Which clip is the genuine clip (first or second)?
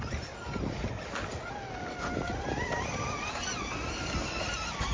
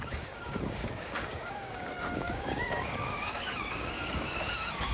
first